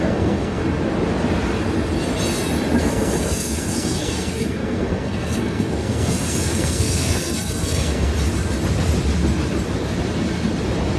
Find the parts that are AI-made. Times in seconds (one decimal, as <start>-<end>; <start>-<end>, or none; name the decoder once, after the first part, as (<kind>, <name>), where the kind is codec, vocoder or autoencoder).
0.0-0.6 (codec, SNAC); 2.8-8.1